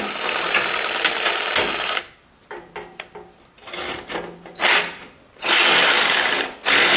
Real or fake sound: real